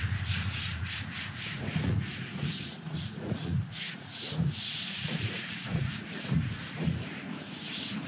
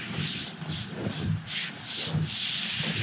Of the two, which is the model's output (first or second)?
first